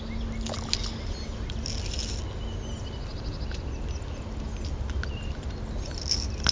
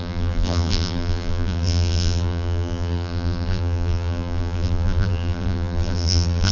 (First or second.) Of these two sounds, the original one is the first